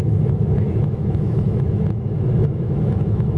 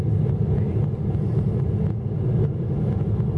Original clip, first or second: second